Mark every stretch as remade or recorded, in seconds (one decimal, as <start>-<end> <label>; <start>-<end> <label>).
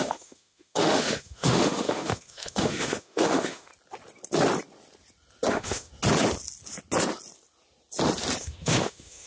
0.0-3.7 remade; 3.7-5.5 recorded; 5.5-5.9 remade; 5.9-8.4 recorded; 8.4-9.3 remade